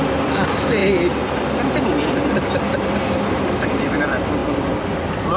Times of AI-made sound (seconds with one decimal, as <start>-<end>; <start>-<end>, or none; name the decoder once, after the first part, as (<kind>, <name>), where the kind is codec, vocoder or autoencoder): none